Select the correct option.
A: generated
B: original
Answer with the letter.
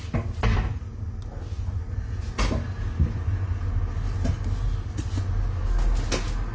B